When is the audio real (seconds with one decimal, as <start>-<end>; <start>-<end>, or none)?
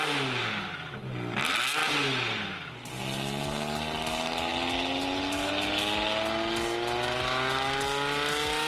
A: 0.0-8.7